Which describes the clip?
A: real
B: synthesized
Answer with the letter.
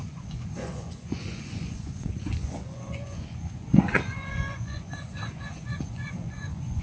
B